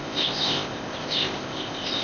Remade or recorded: remade